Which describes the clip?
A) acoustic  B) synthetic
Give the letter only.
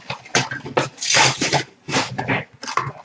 A